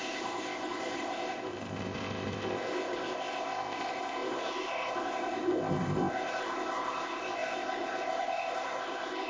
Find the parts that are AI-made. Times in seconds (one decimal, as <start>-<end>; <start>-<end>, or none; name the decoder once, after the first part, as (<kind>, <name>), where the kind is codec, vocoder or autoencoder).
0.0-9.3 (codec, ZipCodec)